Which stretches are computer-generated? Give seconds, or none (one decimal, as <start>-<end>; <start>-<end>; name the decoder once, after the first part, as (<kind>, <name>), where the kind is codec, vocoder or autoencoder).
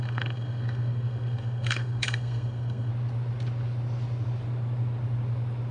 0.0-2.9 (codec, SNAC)